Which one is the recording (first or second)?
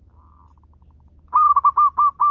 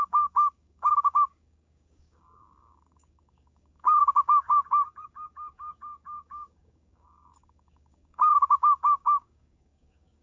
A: first